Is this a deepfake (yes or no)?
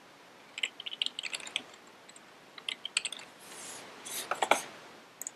no